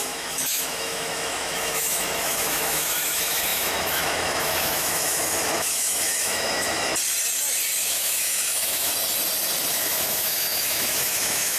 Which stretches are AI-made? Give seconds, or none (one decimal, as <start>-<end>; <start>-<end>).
0.0-6.9; 7.8-8.9; 9.7-11.6